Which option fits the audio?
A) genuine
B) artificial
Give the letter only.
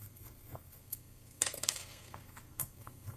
B